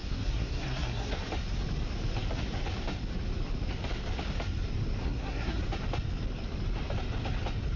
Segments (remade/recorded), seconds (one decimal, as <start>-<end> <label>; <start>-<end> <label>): 0.0-1.2 remade; 1.2-5.0 recorded; 5.0-5.6 remade; 5.6-7.8 recorded